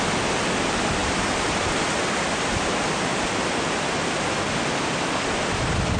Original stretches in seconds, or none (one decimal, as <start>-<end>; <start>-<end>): 0.0-1.0; 1.8-6.0